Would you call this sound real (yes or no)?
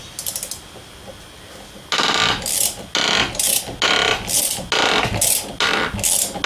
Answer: yes